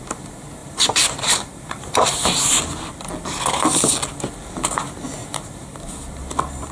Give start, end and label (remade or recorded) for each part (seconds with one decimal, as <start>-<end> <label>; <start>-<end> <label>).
0.0-0.6 recorded; 0.6-2.5 remade; 2.5-5.2 recorded; 5.2-5.8 remade; 5.8-6.7 recorded